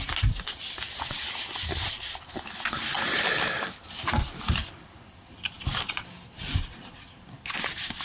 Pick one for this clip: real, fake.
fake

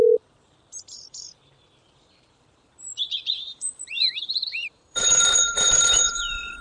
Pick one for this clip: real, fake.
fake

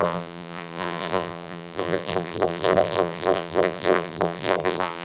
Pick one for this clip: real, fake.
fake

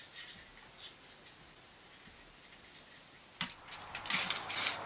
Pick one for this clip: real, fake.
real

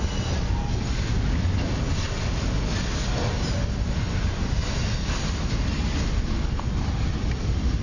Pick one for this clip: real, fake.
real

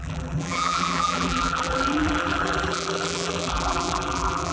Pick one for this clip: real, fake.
fake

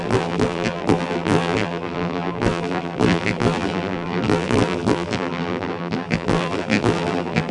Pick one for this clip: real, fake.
fake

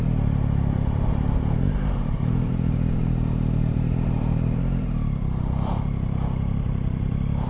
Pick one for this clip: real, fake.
fake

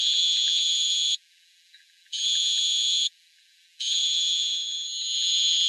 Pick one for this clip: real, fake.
fake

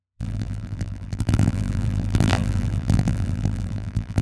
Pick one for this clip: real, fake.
fake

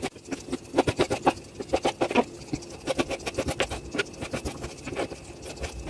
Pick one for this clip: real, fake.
real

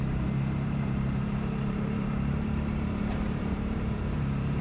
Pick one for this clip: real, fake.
fake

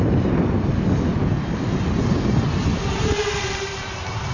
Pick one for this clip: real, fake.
real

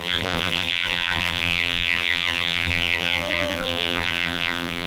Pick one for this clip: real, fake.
fake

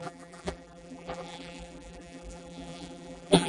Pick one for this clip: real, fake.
fake